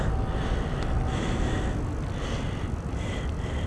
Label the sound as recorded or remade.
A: recorded